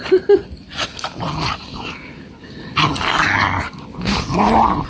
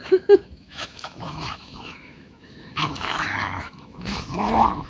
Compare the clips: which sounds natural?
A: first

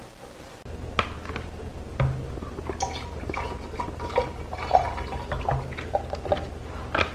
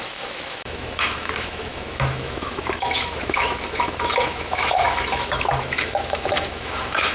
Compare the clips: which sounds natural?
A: first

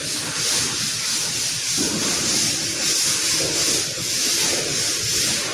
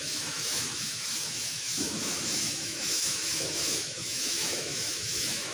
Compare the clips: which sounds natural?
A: first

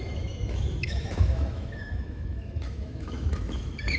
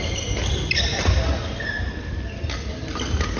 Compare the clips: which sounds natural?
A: second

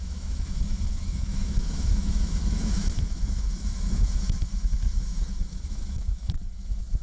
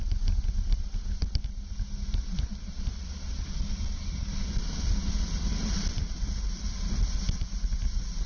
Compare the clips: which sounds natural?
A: second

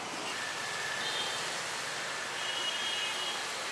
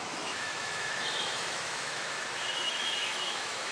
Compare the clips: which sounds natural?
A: first